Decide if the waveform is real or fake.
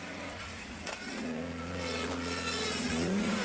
fake